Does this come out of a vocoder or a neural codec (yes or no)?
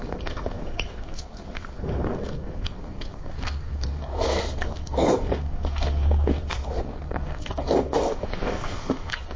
yes